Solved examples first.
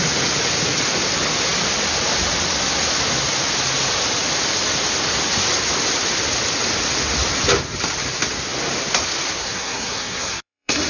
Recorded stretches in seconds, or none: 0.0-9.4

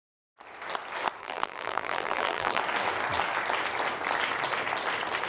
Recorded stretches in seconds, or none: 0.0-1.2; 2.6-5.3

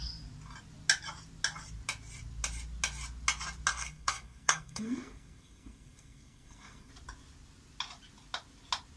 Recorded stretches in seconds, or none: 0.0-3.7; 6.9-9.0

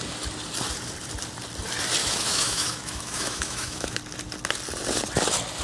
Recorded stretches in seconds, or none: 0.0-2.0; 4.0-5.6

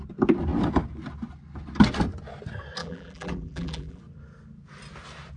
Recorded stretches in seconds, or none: 0.0-2.8; 4.0-5.4